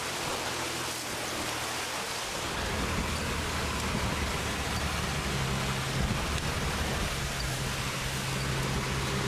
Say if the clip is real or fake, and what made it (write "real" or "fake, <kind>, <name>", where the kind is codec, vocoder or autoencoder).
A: real